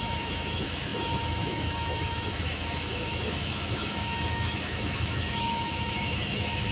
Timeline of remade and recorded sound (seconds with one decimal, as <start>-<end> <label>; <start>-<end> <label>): 0.0-6.7 remade